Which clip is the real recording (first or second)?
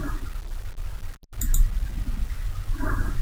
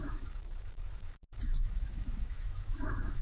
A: first